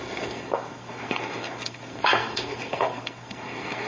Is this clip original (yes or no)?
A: no